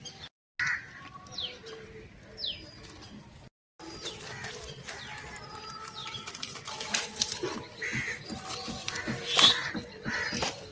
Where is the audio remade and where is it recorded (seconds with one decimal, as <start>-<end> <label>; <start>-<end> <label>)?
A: 0.0-10.7 recorded

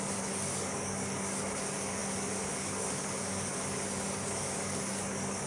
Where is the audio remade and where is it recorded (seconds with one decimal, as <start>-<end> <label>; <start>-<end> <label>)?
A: 0.0-5.5 remade

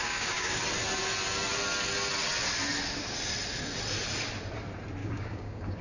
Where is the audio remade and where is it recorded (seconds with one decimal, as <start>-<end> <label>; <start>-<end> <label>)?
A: 0.0-0.6 remade; 0.6-5.0 recorded; 5.0-5.8 remade